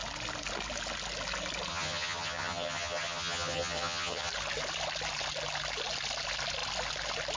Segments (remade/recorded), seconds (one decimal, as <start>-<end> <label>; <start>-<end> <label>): 0.0-1.7 recorded; 1.7-4.3 remade; 4.3-7.4 recorded